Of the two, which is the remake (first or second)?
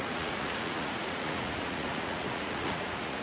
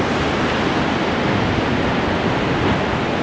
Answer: first